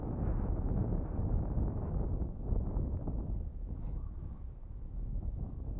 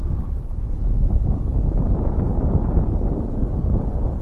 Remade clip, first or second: first